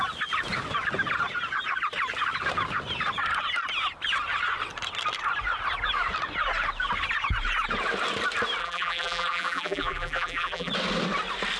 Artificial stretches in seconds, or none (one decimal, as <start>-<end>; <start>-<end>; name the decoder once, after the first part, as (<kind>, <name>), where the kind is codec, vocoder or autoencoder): 8.6-10.7 (vocoder, BigVGAN v2)